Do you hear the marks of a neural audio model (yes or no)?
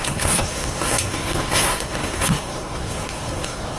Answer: yes